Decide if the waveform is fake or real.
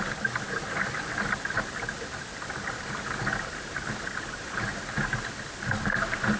real